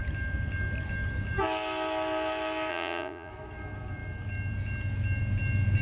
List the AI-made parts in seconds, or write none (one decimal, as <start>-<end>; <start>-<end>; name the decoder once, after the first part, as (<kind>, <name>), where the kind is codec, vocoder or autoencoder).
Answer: 2.7-3.3 (vocoder, Vocos)